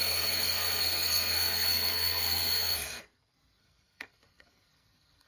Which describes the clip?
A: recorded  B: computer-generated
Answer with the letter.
B